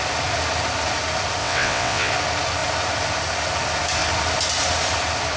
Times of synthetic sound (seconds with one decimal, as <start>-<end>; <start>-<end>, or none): 1.4-2.1